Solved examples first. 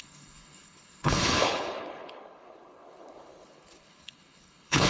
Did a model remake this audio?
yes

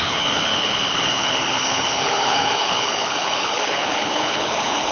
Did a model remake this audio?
yes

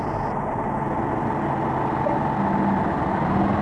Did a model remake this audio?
no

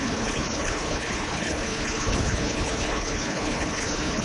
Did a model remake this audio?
yes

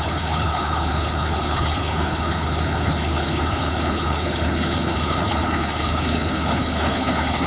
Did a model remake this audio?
yes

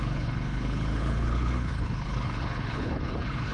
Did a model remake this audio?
yes